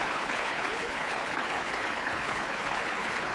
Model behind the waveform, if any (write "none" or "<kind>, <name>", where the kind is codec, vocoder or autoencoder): codec, HILCodec